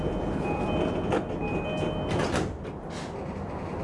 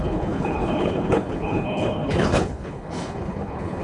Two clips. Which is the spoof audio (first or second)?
second